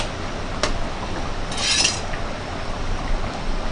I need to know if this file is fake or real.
real